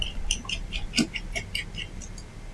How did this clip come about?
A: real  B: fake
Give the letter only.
A